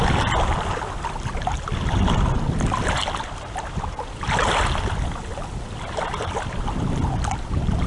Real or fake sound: real